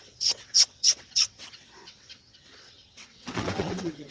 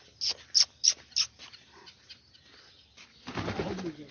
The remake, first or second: first